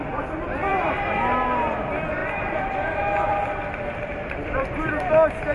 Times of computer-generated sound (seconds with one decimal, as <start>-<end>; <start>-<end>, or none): 0.7-1.2; 2.2-5.1